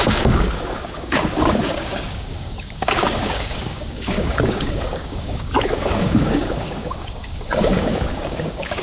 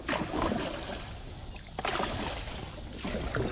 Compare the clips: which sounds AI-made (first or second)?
first